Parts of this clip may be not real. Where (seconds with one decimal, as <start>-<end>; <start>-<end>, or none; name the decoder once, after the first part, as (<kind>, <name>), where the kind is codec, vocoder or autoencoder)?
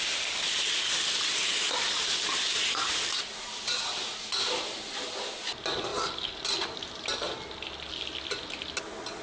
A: none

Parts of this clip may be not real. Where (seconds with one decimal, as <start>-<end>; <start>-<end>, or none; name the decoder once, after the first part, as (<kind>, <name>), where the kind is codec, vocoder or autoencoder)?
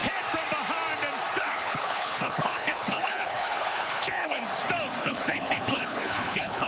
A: 1.4-4.4 (codec, HILCodec); 5.0-6.7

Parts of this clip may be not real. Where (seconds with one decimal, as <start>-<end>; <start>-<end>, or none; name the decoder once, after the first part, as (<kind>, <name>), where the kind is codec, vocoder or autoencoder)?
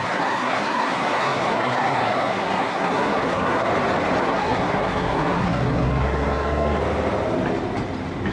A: 0.0-3.7 (codec, SNAC); 4.2-6.8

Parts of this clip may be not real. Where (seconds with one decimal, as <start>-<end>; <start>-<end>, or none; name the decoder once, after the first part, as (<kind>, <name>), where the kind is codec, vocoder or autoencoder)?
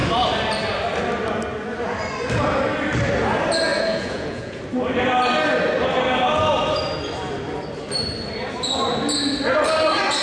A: 3.7-4.6 (vocoder, Vocos)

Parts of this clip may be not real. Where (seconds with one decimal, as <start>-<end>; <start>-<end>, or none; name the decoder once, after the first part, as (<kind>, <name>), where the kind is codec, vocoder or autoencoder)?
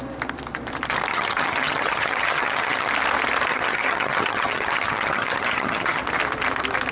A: 1.1-2.9 (vocoder, HiFi-GAN); 3.5-6.0